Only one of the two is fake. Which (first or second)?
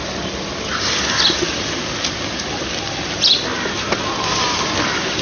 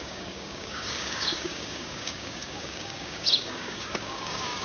second